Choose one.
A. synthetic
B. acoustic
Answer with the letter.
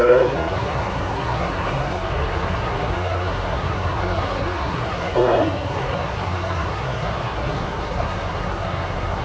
A